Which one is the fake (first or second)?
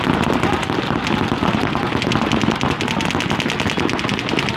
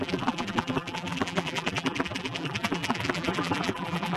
second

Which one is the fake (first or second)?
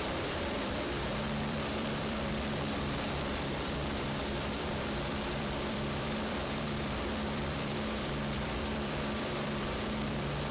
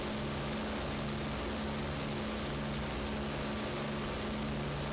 first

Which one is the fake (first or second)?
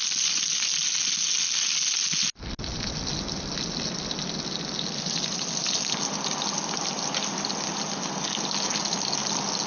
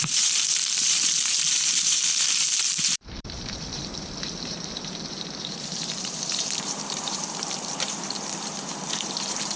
second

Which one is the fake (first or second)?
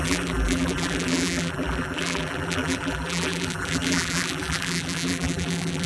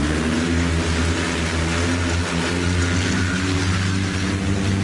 first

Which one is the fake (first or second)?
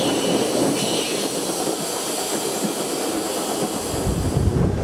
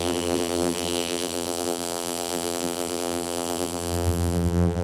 second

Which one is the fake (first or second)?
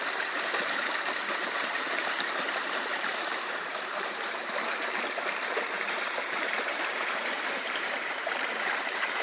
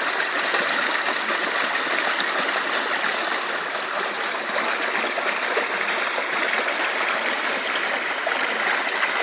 first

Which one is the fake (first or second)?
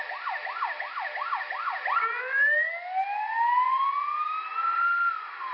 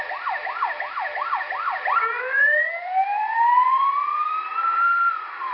second